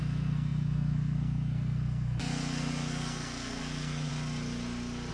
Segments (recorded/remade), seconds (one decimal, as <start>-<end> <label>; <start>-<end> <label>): 0.0-4.1 remade; 4.1-5.1 recorded